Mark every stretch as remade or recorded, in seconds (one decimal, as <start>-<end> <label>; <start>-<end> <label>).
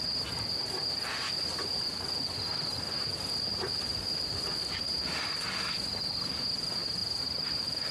0.0-3.5 recorded; 3.5-5.3 remade; 5.3-7.0 recorded; 7.0-7.9 remade